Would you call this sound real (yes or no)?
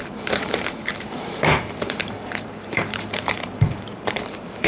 no